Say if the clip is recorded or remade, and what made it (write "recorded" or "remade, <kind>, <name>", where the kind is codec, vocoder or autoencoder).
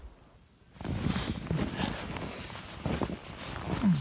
recorded